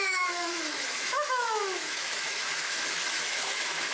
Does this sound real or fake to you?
fake